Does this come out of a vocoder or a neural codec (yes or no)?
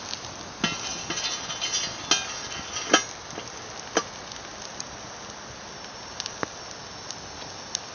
no